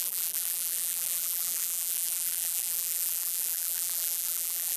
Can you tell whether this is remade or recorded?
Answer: remade